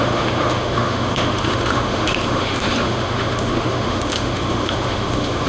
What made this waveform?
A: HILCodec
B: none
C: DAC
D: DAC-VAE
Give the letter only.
D